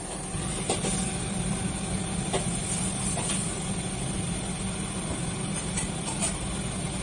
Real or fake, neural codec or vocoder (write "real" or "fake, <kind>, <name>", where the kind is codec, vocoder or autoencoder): real